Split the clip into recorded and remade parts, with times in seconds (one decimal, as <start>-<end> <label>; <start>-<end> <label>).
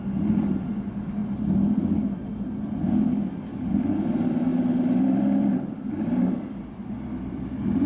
0.0-1.2 remade; 1.2-2.8 recorded; 2.8-7.9 remade